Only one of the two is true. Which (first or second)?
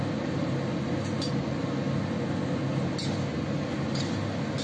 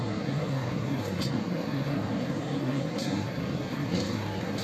first